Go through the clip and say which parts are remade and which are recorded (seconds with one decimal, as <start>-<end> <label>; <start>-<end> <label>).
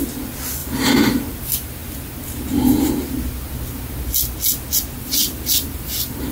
0.0-0.6 recorded; 0.6-1.4 remade; 1.4-5.2 recorded; 5.2-6.3 remade